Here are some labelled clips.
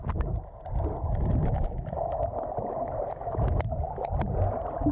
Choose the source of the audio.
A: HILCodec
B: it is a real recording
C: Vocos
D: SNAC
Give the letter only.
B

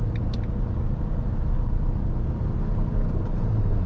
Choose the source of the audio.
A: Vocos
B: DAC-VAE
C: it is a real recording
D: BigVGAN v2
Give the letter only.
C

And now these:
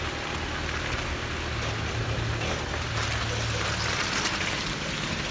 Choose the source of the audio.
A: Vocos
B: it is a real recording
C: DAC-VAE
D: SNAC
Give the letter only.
B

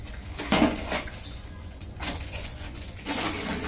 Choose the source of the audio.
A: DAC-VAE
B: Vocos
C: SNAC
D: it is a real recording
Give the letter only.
B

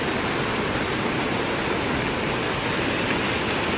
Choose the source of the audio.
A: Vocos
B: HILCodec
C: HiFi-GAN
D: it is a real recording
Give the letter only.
D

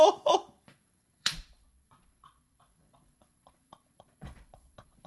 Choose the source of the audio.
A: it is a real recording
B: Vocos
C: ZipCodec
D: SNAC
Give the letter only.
B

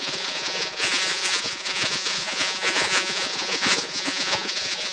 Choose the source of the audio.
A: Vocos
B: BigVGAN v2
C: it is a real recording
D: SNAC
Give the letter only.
A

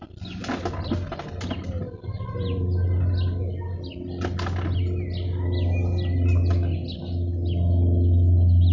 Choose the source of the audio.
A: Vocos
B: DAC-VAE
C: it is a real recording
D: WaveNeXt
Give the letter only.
C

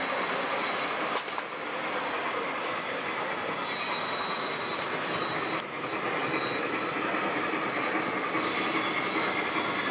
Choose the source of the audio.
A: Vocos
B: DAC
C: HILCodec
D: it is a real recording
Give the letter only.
D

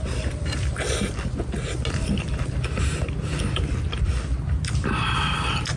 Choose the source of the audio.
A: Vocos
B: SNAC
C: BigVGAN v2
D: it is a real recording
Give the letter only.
D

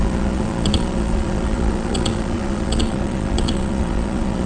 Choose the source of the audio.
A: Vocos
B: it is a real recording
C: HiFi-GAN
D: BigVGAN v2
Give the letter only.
A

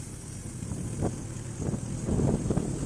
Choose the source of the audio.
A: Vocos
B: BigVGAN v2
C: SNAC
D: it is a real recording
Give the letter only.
D